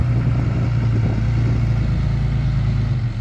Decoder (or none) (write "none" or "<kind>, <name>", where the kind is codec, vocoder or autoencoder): none